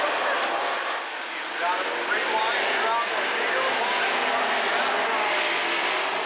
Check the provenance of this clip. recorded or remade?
recorded